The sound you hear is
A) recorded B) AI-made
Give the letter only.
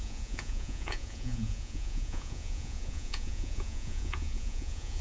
B